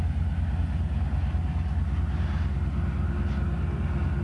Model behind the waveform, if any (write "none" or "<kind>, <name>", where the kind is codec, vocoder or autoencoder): none